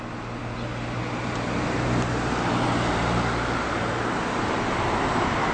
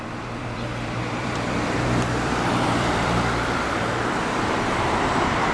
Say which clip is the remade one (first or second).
second